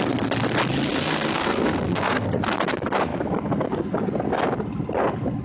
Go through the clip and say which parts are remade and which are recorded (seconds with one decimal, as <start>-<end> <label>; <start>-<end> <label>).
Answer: 0.0-0.9 recorded; 0.9-2.4 remade; 2.4-5.4 recorded